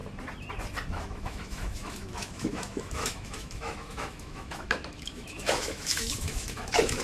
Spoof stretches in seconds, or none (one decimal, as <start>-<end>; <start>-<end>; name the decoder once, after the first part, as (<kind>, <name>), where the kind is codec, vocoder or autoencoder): 0.9-7.0 (autoencoder, DAC-VAE)